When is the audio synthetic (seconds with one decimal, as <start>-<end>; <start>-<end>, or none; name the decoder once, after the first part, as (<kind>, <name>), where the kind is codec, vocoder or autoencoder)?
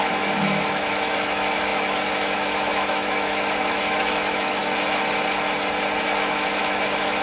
0.0-4.6 (autoencoder, DAC-VAE); 6.6-7.2